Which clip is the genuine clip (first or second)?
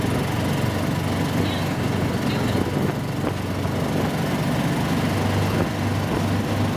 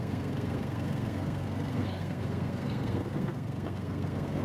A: first